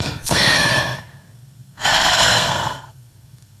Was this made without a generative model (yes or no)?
no